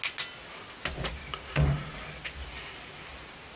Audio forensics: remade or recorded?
recorded